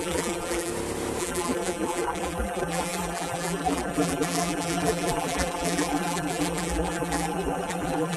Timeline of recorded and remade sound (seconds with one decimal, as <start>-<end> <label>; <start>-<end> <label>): 0.0-0.7 remade; 0.7-1.2 recorded; 1.2-8.2 remade